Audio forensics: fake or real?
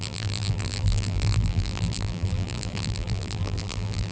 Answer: fake